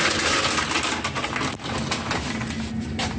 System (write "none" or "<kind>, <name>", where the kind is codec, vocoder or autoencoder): none